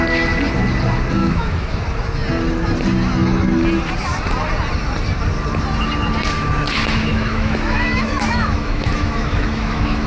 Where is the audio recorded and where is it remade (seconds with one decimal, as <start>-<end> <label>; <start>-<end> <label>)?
0.0-1.2 recorded; 1.2-1.8 remade; 1.8-7.1 recorded; 7.1-10.1 remade